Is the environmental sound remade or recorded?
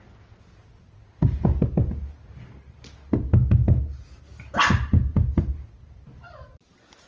recorded